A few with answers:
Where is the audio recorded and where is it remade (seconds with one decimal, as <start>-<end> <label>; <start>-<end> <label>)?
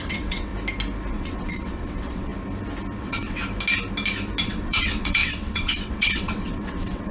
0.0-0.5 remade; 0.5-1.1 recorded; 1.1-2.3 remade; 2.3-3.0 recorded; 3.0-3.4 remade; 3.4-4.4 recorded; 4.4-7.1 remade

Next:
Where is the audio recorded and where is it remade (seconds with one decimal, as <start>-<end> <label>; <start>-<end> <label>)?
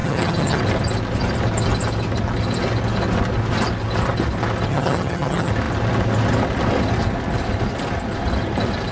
0.0-0.6 remade; 0.6-4.7 recorded; 4.7-5.5 remade; 5.5-8.9 recorded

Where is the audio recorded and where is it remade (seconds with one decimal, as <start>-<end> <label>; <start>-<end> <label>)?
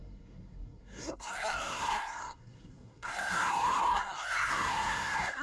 0.0-5.4 remade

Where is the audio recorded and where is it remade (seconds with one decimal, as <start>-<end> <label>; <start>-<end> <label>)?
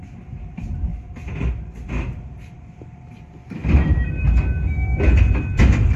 0.0-0.9 remade; 0.9-1.4 recorded; 1.4-3.6 remade; 3.6-5.6 recorded; 5.6-6.0 remade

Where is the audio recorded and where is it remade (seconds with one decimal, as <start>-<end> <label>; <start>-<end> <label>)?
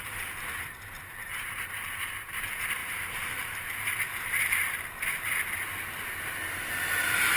0.0-1.2 recorded; 1.2-1.8 remade; 1.8-2.8 recorded; 2.8-4.5 remade; 4.5-7.4 recorded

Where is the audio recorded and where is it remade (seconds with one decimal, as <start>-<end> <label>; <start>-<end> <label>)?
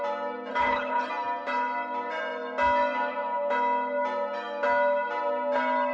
0.0-0.5 recorded; 0.5-1.1 remade; 1.1-5.9 recorded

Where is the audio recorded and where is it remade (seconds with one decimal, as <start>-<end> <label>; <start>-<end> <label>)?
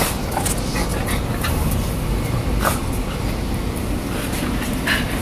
0.0-5.2 recorded